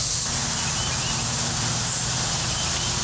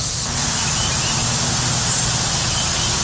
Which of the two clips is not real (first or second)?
second